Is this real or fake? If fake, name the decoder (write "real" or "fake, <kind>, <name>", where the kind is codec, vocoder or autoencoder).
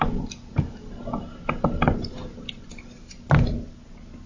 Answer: real